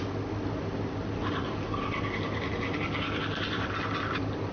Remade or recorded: recorded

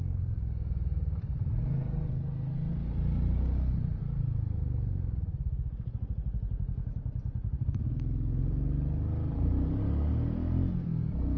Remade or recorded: recorded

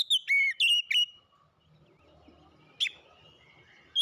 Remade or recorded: recorded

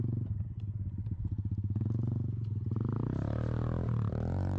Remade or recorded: remade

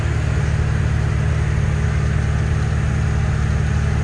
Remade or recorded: recorded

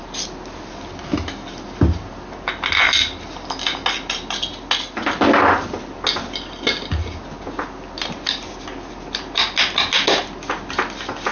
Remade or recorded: recorded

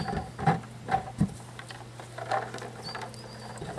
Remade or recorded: recorded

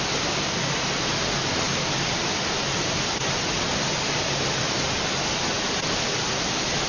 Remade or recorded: recorded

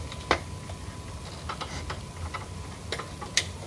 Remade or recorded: recorded